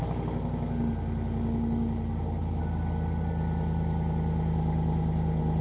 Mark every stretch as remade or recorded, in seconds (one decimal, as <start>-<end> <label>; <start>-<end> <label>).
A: 0.0-5.6 recorded